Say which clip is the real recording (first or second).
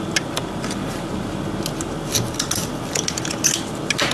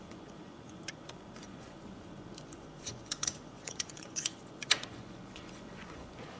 first